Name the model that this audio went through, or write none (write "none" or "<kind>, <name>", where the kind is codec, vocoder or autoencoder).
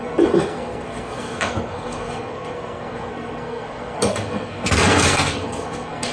codec, SNAC